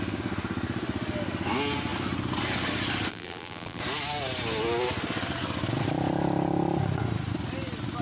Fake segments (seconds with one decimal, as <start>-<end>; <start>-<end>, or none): 3.1-3.8